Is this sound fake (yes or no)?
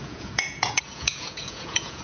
yes